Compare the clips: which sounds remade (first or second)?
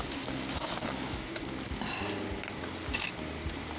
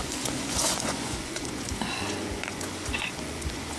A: second